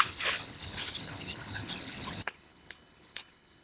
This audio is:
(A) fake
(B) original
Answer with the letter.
A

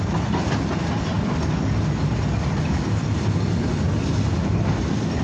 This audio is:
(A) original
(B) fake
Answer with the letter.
A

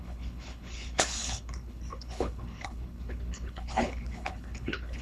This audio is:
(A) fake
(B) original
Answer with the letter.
A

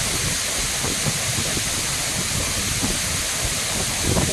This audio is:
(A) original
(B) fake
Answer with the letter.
A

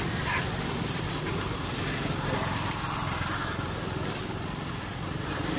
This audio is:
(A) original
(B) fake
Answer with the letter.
A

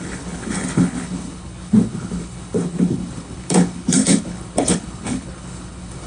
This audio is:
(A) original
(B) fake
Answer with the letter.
B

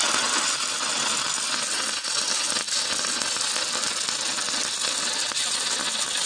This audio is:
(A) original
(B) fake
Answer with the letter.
A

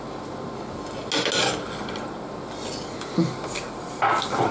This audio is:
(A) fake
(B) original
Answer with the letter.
B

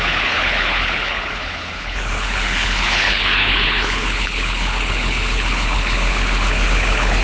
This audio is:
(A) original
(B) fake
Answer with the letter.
B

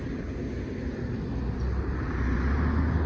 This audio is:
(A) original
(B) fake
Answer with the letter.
A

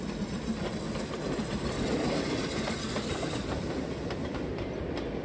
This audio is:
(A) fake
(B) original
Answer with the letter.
B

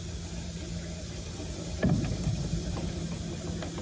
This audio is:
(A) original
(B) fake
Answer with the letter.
A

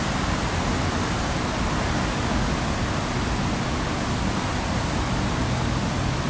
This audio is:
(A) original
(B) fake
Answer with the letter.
A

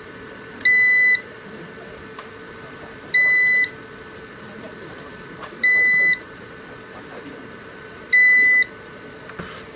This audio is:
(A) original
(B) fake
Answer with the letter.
A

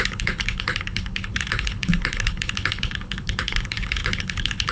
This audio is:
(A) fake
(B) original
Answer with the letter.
A